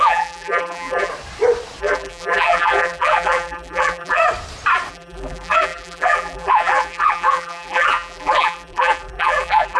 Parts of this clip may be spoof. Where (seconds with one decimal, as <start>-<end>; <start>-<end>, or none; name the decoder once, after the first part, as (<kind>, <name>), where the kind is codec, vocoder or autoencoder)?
0.0-1.1 (vocoder, BigVGAN v2); 1.8-4.2; 4.9-9.8